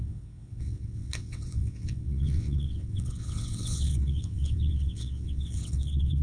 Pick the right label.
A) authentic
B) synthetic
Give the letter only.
B